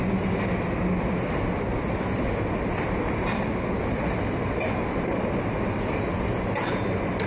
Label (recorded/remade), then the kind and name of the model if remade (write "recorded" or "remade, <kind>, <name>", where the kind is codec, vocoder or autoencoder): recorded